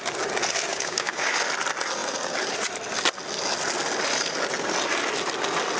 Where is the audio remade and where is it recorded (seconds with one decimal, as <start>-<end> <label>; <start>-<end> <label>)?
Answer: 0.0-0.7 recorded; 0.7-1.3 remade; 1.3-5.8 recorded